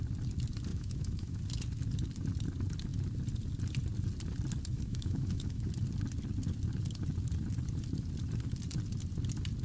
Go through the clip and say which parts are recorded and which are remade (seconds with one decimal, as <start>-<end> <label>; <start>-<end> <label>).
0.0-0.7 recorded; 0.7-1.4 remade; 1.4-4.7 recorded; 4.7-5.7 remade; 5.7-9.6 recorded